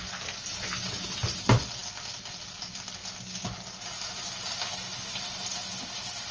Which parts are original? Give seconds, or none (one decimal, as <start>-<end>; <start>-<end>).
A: 0.0-6.3